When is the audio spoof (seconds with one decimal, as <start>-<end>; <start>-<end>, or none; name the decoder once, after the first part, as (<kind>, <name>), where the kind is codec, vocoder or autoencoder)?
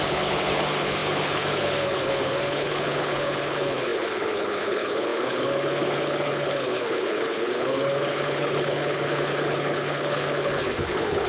0.0-11.3 (codec, HILCodec)